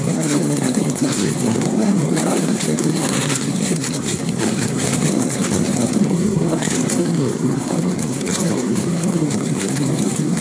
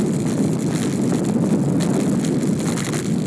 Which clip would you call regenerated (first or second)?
first